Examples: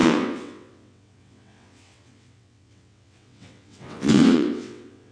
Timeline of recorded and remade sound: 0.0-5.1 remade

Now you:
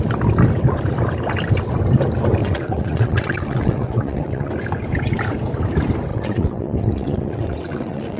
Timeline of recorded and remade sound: 0.0-2.4 recorded; 2.4-4.5 remade; 4.5-6.1 recorded; 6.1-8.2 remade

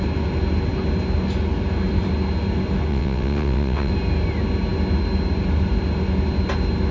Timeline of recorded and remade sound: 0.0-2.9 recorded; 2.9-3.9 remade; 3.9-6.9 recorded

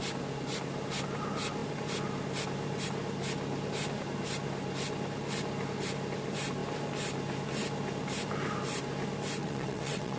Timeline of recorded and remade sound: 0.0-9.4 recorded; 9.4-10.2 remade

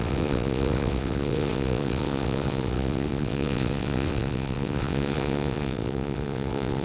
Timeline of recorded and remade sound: 0.0-6.8 remade

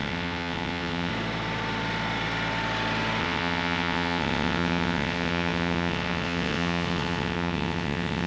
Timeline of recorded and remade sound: 0.0-1.1 remade; 1.1-3.2 recorded; 3.2-8.3 remade